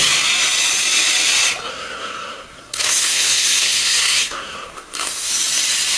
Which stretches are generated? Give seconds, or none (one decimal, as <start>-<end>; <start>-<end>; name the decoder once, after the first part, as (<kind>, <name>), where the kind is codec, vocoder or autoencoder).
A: 1.7-5.3 (codec, SNAC)